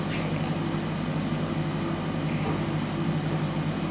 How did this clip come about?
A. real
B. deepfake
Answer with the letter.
A